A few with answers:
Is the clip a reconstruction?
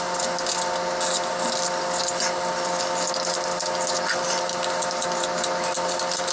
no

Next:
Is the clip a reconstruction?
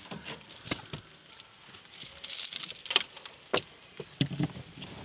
no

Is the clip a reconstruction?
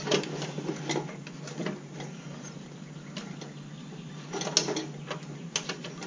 no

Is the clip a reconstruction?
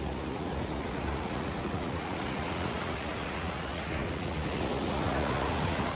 yes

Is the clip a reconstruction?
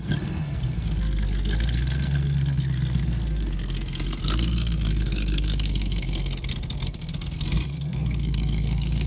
yes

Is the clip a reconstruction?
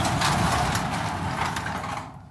no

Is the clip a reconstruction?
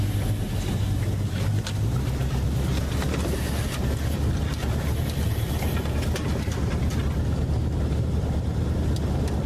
no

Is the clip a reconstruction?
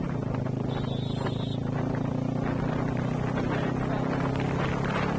no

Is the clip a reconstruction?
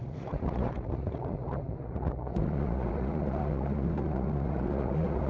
yes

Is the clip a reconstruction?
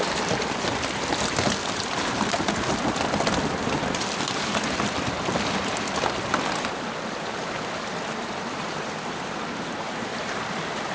yes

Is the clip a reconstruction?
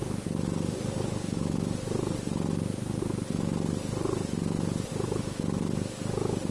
no